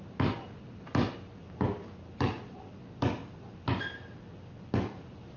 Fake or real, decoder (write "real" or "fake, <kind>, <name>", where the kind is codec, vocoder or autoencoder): real